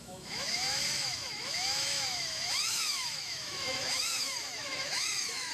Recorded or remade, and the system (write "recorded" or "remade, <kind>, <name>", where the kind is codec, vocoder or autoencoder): remade, autoencoder, DAC-VAE